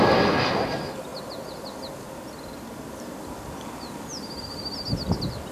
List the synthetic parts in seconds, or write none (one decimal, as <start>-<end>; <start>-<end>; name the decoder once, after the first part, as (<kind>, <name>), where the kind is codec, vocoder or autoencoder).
none